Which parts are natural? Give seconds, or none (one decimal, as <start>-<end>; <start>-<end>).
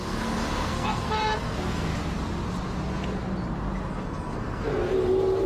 1.9-3.9; 4.7-5.5